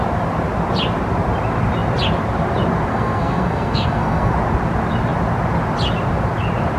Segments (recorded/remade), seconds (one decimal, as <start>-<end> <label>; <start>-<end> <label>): 0.0-2.9 recorded; 2.9-4.3 remade; 4.3-6.8 recorded